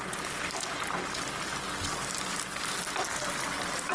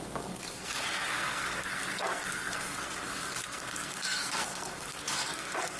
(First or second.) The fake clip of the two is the second